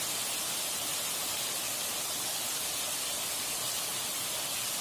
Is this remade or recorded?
recorded